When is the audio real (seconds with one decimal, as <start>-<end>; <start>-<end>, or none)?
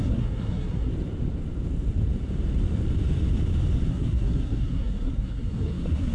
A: 0.9-3.9